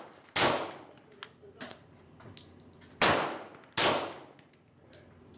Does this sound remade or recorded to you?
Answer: recorded